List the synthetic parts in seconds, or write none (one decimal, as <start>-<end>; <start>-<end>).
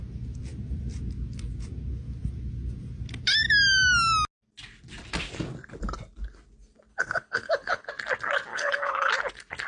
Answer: 6.9-7.9; 8.5-9.1